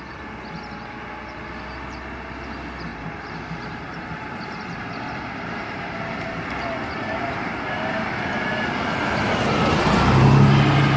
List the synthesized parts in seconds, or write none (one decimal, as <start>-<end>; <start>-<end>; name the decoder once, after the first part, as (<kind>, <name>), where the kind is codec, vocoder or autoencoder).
2.9-6.5 (vocoder, BigVGAN v2)

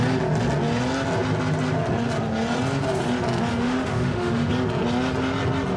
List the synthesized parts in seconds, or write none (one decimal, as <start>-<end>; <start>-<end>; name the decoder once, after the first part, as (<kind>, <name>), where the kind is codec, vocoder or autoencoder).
3.5-4.5 (autoencoder, DAC-VAE)

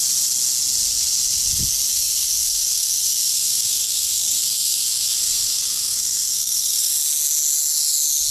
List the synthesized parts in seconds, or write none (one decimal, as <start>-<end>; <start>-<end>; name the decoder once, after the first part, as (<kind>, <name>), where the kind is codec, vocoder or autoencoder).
1.9-6.9 (codec, SNAC)

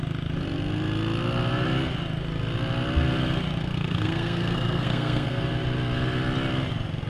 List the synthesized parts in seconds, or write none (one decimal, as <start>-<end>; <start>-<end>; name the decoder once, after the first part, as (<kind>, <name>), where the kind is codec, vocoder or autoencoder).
3.6-5.4 (codec, SNAC)